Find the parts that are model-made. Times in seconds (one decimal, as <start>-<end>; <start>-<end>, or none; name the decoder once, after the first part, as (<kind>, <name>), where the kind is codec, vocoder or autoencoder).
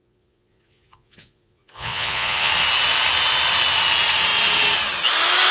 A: 0.0-2.5 (vocoder, Vocos)